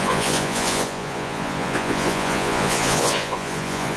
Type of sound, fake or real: fake